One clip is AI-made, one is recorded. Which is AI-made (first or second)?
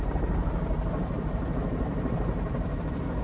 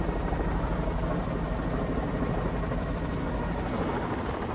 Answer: first